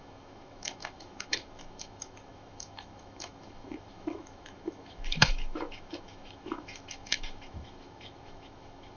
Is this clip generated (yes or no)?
yes